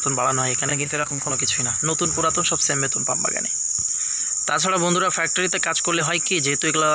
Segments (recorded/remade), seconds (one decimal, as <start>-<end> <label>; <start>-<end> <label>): 0.0-0.7 recorded; 0.7-1.3 remade; 1.3-6.9 recorded